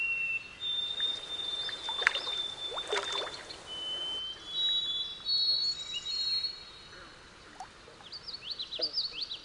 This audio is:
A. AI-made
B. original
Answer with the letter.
B